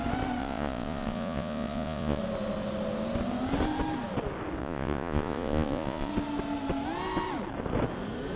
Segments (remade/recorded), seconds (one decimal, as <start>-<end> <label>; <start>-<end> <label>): 0.0-0.4 recorded; 0.4-2.2 remade; 2.2-4.6 recorded; 4.6-6.1 remade; 6.1-8.4 recorded